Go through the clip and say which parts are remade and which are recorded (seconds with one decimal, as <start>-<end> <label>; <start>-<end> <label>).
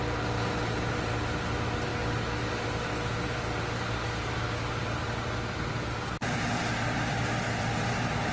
0.0-8.3 recorded